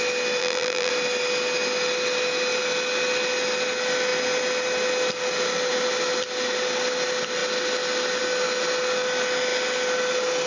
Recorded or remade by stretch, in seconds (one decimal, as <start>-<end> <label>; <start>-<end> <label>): 0.0-0.4 recorded; 0.4-0.9 remade; 0.9-10.5 recorded